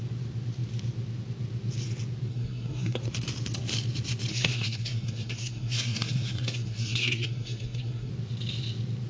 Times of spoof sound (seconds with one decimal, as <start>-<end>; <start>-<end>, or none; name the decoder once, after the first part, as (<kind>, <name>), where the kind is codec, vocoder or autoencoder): 2.3-3.0 (codec, SNAC); 4.3-8.1